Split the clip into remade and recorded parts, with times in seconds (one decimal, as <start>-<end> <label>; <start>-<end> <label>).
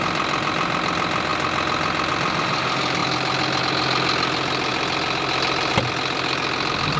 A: 0.0-7.0 recorded